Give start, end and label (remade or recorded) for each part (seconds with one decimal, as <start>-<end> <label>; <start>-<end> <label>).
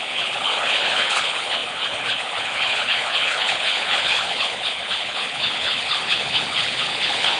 0.0-7.4 remade